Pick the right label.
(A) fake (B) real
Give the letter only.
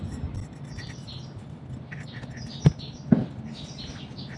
B